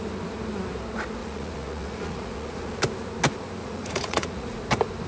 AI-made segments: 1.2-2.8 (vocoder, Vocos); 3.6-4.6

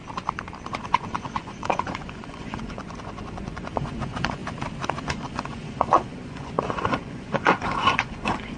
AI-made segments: 0.7-4.4 (vocoder, Vocos); 5.0-8.6

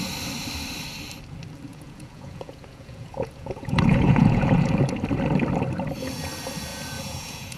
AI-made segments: 1.7-4.9 (vocoder, Vocos); 6.7-7.6

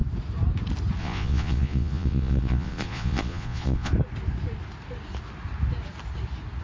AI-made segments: 1.0-3.9 (vocoder, Vocos)

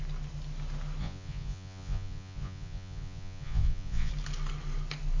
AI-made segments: 1.0-4.1 (vocoder, Vocos)

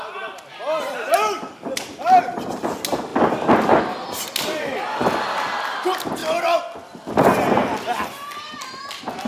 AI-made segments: none

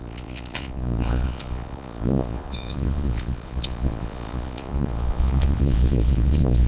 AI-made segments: 0.0-6.7 (vocoder, Vocos)

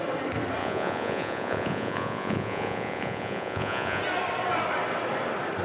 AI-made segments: 0.6-4.0 (vocoder, Vocos)